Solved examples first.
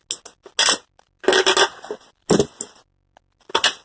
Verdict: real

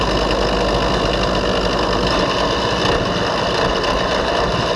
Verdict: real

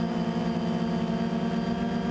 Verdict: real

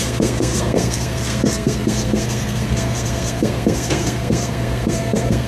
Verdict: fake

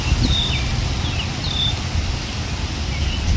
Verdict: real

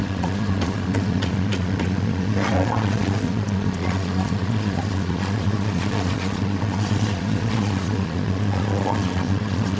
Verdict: fake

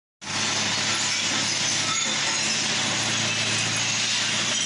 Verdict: real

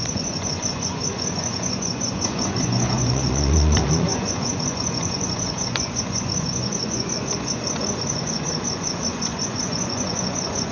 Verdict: fake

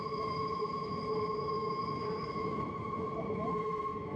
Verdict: fake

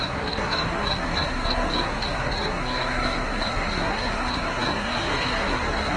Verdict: fake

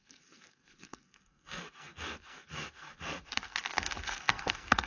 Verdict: fake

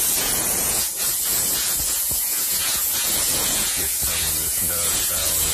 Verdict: fake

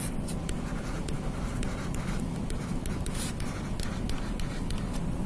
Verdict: real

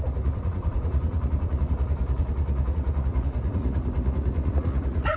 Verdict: fake